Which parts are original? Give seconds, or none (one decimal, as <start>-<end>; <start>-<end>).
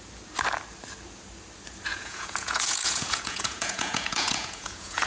0.0-1.9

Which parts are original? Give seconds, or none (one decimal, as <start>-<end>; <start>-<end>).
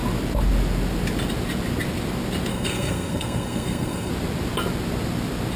0.0-2.5; 4.1-5.6